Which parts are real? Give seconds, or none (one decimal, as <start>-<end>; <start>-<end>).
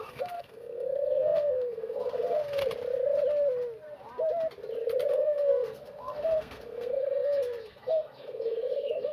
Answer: 2.6-5.1